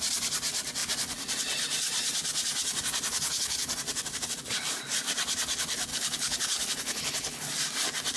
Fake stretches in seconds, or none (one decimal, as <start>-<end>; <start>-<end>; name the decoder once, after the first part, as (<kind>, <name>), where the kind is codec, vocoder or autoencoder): 3.1-3.7 (codec, HILCodec); 5.9-7.5